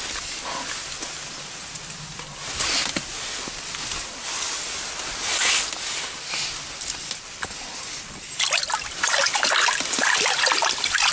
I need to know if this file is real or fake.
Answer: real